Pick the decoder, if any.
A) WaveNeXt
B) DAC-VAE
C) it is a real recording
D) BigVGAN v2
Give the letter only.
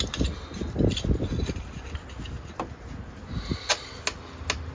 C